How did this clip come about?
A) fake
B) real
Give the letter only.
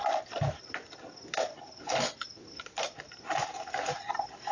B